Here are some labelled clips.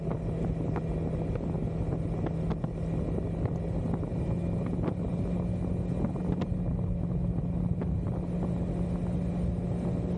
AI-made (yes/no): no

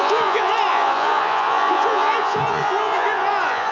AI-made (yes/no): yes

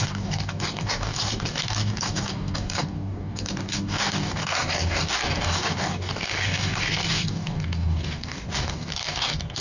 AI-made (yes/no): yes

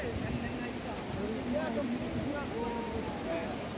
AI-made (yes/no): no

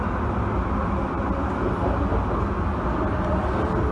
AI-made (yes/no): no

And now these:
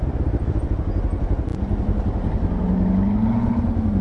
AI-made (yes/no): no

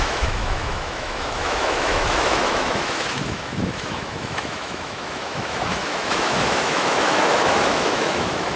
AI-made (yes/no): yes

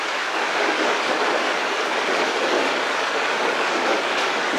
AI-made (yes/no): yes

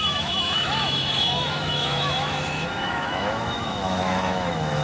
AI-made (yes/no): yes